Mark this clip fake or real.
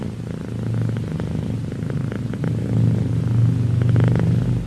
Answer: real